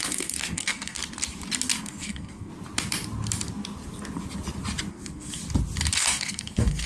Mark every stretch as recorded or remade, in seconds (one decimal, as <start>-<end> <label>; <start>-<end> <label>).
0.0-1.0 remade; 1.0-1.8 recorded; 1.8-2.5 remade; 2.5-4.9 recorded; 4.9-5.4 remade; 5.4-6.0 recorded; 6.0-6.9 remade